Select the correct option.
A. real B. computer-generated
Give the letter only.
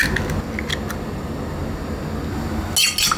A